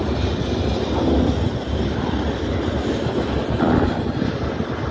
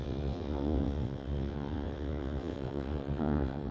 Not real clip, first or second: second